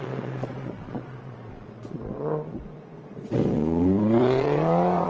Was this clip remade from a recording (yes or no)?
yes